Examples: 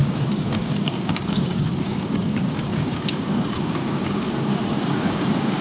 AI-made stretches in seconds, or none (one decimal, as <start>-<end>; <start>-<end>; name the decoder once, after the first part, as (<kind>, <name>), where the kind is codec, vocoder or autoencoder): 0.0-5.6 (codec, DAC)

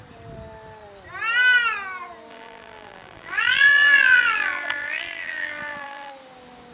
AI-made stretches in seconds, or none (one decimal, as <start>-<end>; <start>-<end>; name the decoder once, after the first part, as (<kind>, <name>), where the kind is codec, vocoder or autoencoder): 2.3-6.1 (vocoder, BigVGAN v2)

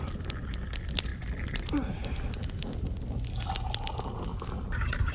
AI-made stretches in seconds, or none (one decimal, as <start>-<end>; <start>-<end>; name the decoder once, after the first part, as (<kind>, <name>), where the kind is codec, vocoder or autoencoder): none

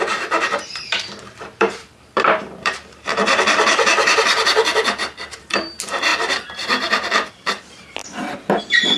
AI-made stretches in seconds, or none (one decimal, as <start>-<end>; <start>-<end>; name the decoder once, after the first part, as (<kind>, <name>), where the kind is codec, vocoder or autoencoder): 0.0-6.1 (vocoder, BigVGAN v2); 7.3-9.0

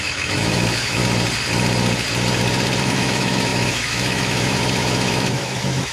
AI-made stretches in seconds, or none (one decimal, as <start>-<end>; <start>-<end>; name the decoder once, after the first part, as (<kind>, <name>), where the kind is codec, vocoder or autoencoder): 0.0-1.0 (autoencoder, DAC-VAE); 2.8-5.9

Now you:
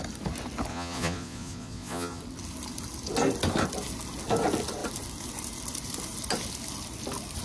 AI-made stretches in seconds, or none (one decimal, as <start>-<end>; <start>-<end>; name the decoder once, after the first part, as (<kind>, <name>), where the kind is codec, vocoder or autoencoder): 0.7-2.2 (vocoder, Vocos)

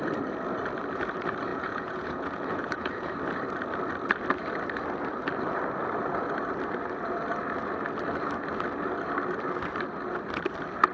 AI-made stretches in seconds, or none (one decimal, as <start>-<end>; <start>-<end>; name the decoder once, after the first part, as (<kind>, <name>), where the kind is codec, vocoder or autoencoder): 1.5-3.1 (vocoder, Vocos)